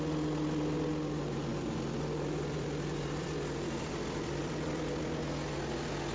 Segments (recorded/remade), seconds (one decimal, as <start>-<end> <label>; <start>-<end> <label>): 0.0-1.5 recorded; 1.5-5.2 remade; 5.2-6.1 recorded